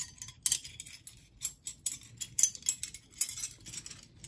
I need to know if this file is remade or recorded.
recorded